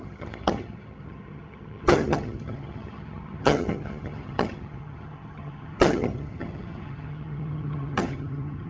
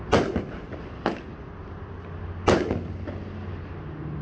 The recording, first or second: second